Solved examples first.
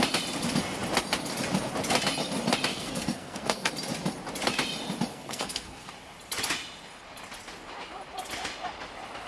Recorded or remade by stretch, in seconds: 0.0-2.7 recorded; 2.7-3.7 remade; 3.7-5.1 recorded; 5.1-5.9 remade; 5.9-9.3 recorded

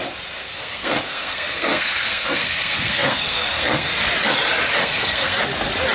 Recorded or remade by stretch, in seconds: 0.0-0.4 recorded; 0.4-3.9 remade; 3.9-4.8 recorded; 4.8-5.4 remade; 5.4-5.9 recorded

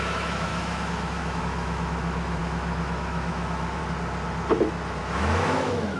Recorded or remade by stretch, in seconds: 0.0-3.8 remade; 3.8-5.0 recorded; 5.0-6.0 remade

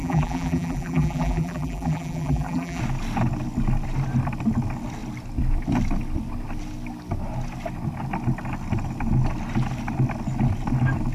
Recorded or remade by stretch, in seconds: 0.0-2.8 remade; 2.8-11.1 recorded